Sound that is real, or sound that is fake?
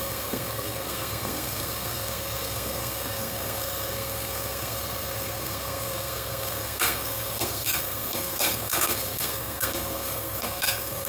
fake